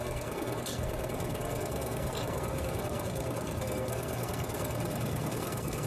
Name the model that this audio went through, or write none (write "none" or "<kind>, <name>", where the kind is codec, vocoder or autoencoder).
codec, SNAC